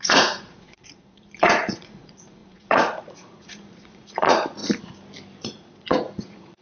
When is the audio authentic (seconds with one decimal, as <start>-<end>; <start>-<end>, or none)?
4.6-5.4